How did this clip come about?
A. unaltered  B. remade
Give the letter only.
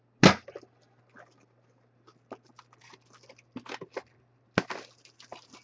A